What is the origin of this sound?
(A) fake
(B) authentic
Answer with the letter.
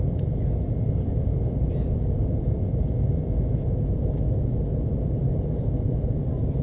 B